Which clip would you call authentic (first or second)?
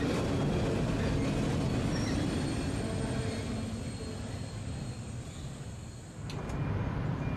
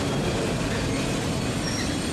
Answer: first